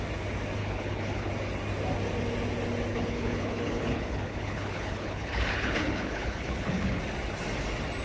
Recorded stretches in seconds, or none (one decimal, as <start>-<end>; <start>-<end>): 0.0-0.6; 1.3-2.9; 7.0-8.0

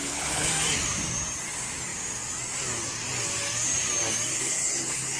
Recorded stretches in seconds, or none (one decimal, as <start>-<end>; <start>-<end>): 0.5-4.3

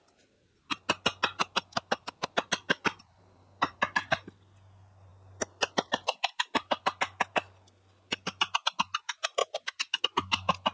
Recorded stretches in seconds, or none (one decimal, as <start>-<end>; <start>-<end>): 0.0-10.7

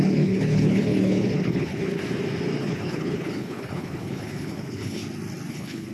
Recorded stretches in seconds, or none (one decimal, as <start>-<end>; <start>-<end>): 2.0-2.6; 5.0-5.5